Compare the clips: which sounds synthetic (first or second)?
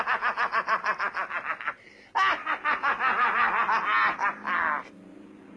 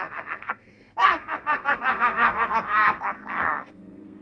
second